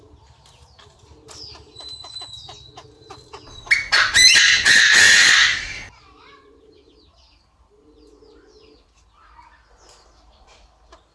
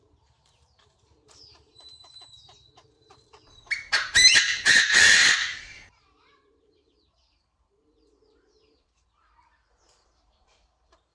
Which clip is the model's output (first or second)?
second